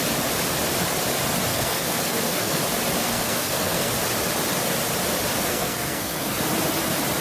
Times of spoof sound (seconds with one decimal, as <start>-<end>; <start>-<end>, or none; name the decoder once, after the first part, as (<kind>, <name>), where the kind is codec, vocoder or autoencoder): 1.5-2.6 (codec, SNAC); 3.0-3.9; 5.3-6.4